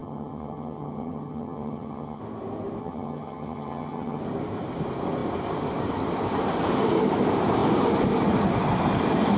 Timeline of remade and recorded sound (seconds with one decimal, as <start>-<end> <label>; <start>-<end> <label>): 0.0-2.2 remade; 2.2-2.8 recorded; 2.8-4.2 remade; 4.2-9.4 recorded